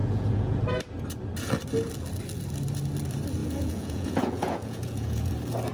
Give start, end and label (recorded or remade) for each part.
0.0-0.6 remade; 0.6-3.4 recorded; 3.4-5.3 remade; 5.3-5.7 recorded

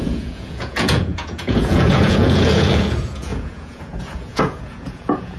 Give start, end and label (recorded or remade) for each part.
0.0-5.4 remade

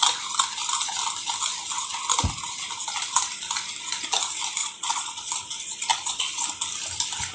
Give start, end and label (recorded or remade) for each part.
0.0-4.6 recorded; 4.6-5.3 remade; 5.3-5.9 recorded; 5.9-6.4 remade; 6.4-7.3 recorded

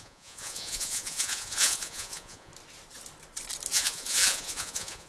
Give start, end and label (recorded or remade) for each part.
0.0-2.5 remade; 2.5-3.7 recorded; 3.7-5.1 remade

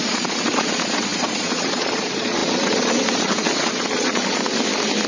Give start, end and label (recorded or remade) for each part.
0.0-4.4 remade; 4.4-5.1 recorded